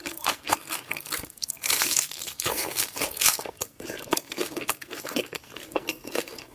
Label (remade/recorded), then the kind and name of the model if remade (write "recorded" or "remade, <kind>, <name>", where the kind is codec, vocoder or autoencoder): remade, codec, SNAC